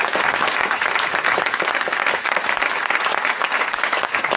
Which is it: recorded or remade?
remade